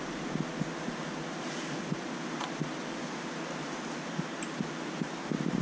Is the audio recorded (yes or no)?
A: yes